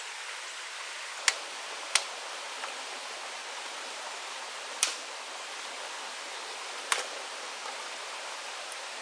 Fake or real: real